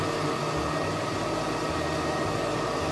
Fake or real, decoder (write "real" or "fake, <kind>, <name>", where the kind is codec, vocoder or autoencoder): real